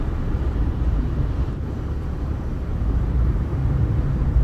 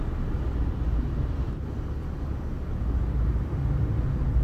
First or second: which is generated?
first